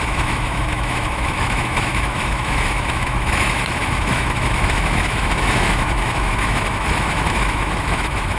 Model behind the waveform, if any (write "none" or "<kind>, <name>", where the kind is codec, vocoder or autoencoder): autoencoder, DAC-VAE